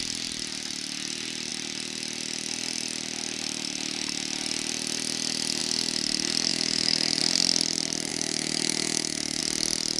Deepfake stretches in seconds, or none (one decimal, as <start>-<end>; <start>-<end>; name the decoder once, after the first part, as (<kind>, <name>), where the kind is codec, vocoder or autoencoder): 6.5-7.2 (autoencoder, DAC-VAE); 8.1-9.4